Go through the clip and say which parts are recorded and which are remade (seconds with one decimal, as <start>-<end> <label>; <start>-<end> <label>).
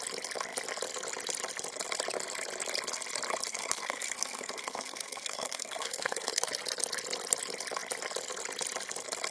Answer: 0.0-3.5 recorded; 3.5-6.5 remade; 6.5-9.3 recorded